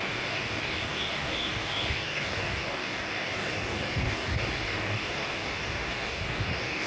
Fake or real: fake